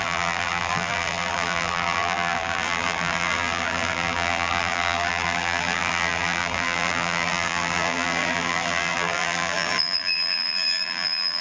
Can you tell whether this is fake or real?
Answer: fake